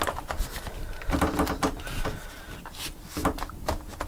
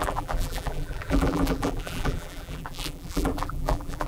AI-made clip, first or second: second